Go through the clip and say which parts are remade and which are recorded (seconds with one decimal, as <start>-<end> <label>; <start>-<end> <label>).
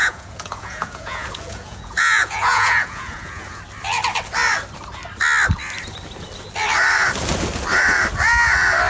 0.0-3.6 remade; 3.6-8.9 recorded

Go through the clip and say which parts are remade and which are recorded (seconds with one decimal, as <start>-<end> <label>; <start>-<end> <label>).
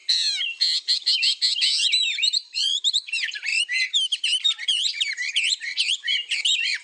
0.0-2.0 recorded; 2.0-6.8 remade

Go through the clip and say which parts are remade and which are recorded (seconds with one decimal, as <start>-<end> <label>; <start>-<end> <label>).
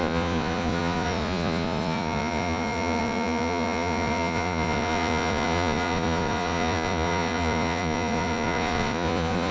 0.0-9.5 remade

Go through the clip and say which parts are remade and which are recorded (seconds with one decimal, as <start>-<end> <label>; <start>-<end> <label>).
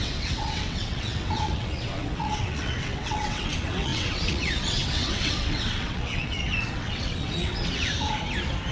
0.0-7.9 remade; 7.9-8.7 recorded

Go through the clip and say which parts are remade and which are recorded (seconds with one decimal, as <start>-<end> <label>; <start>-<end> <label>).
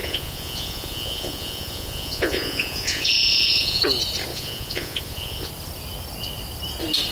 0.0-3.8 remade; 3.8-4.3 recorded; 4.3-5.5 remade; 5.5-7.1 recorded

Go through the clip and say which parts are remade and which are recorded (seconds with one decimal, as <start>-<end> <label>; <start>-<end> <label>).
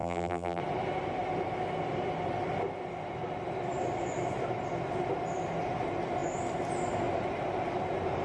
0.0-0.6 remade; 0.6-8.2 recorded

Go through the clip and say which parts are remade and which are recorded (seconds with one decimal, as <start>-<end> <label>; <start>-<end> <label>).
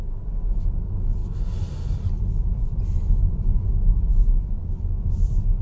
0.0-5.6 recorded